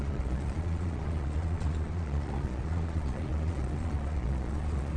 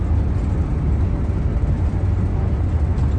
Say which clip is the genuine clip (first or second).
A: second